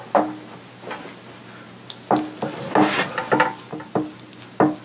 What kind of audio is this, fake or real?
real